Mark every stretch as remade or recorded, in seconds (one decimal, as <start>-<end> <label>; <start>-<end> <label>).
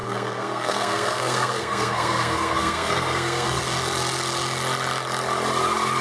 0.0-3.6 remade; 3.6-6.0 recorded